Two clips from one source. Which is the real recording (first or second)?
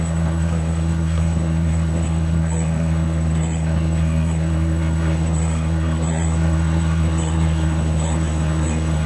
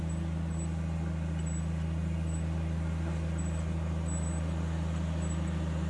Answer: second